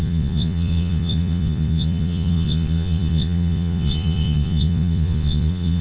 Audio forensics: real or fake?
fake